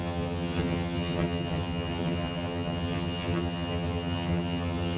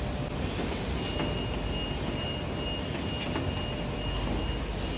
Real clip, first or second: second